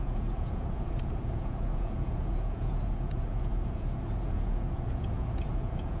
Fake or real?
fake